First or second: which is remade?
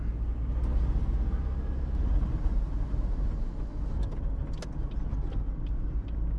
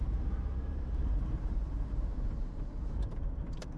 second